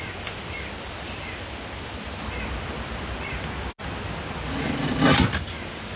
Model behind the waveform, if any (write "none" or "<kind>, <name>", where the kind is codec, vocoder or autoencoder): none